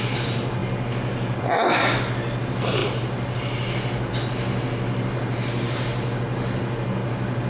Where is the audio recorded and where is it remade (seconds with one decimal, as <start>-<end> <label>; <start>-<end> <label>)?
0.0-7.5 recorded

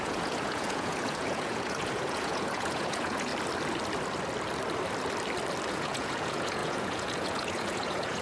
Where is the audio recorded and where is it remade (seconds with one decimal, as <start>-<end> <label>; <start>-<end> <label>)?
0.0-3.3 remade; 3.3-5.7 recorded; 5.7-8.2 remade

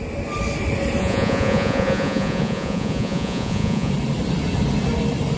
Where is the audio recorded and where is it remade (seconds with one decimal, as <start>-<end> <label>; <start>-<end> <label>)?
0.0-1.0 recorded; 1.0-3.9 remade; 3.9-5.4 recorded

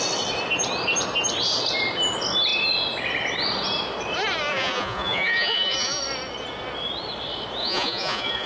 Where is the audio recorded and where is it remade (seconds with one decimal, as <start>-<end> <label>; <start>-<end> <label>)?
0.0-4.5 recorded; 4.5-6.0 remade; 6.0-7.6 recorded; 7.6-8.5 remade

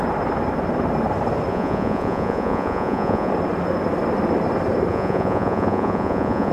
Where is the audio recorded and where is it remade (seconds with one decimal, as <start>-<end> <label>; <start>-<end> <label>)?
0.0-1.5 recorded; 1.5-3.3 remade; 3.3-4.9 recorded; 4.9-6.5 remade

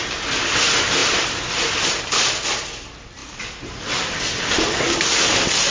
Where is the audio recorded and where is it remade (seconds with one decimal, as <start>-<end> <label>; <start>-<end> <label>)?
0.0-5.7 recorded

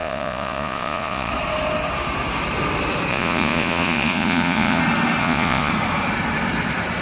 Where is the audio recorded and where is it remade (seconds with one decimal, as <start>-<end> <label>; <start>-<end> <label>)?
0.0-1.3 remade; 1.3-3.1 recorded; 3.1-4.8 remade; 4.8-5.2 recorded; 5.2-5.7 remade; 5.7-7.0 recorded